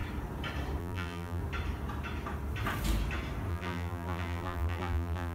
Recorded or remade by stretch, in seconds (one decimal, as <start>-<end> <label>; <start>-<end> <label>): 0.0-0.8 recorded; 0.8-1.4 remade; 1.4-3.5 recorded; 3.5-5.3 remade